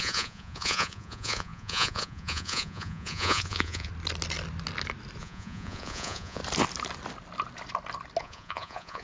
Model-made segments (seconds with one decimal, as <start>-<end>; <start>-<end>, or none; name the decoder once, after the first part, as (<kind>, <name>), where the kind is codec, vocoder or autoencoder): 0.0-3.9 (vocoder, Vocos); 5.2-6.4; 8.2-9.0